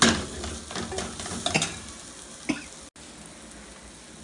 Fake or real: real